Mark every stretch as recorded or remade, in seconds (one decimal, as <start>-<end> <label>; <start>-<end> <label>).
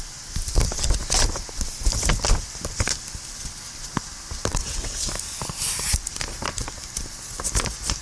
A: 0.0-4.5 recorded; 4.5-5.1 remade; 5.1-8.0 recorded